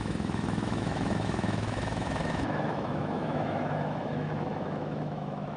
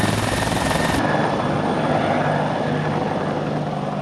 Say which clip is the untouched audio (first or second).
second